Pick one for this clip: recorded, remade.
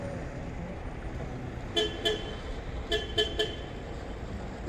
recorded